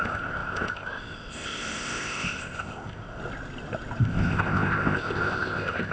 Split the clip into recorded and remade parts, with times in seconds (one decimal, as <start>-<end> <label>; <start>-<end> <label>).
0.0-3.2 remade; 3.2-4.0 recorded; 4.0-5.9 remade